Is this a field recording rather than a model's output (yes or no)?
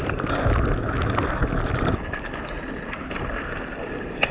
yes